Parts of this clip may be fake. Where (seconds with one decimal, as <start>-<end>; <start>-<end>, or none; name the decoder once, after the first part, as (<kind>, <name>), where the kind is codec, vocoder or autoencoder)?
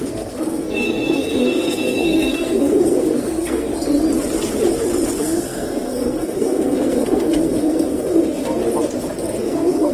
0.0-3.7 (codec, SNAC); 5.2-8.6; 9.4-9.9